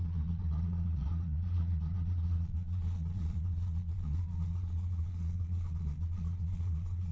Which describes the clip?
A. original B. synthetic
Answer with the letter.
B